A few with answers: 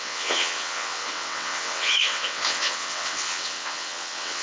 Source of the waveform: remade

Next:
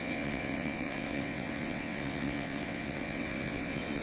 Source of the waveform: remade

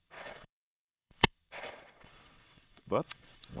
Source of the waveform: remade